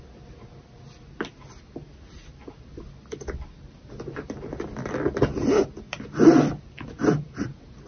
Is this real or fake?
real